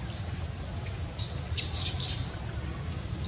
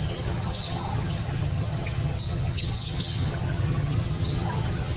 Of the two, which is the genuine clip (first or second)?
first